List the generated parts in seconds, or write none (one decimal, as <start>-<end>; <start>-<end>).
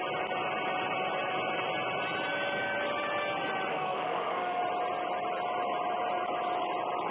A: 3.7-4.6